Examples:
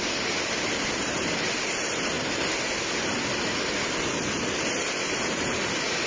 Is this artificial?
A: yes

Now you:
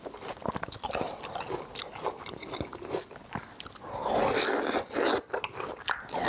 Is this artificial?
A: no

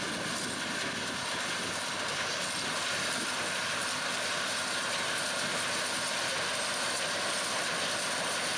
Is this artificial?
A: no